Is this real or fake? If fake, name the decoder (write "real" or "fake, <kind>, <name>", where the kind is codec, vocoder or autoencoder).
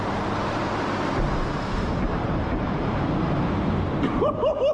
fake, vocoder, BigVGAN v2